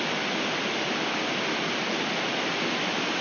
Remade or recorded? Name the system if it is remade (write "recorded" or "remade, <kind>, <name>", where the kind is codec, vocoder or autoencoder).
recorded